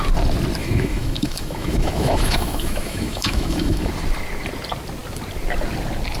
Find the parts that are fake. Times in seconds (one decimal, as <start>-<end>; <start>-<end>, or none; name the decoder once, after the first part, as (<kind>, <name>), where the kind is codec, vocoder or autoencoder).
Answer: 0.6-3.9 (autoencoder, DAC-VAE)